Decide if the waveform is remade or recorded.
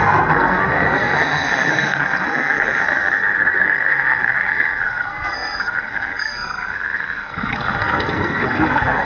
remade